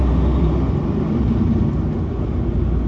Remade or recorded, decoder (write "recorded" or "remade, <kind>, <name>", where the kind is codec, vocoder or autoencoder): recorded